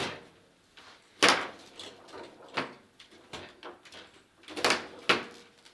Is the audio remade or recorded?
recorded